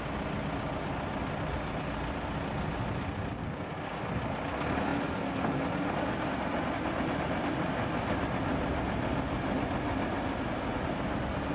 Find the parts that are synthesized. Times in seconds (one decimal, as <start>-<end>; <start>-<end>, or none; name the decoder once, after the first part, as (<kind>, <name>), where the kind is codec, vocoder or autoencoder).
3.4-4.0 (codec, DAC)